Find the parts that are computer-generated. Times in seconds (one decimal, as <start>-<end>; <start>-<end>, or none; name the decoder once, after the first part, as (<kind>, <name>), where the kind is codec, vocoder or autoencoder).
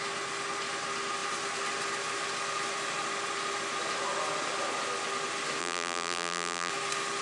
5.6-6.7 (vocoder, BigVGAN v2)